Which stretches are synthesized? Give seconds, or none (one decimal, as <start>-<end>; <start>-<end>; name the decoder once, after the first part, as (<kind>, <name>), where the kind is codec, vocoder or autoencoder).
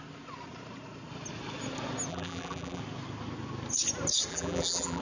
2.1-2.8 (vocoder, BigVGAN v2); 4.3-5.0